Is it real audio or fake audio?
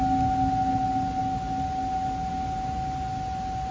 real